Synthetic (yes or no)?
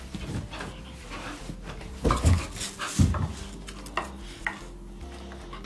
no